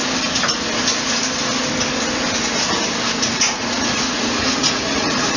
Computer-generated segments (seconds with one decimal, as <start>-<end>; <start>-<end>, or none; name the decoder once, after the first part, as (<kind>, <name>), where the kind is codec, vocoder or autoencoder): 3.2-5.4 (vocoder, Vocos)